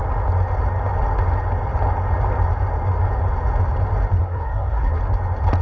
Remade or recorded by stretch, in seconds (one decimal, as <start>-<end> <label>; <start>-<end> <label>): 0.0-4.2 recorded; 4.2-5.0 remade; 5.0-5.6 recorded

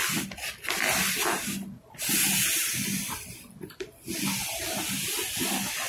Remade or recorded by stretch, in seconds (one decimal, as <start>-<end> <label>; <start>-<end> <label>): 0.0-5.9 recorded